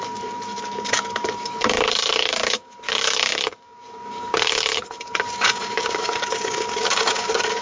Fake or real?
fake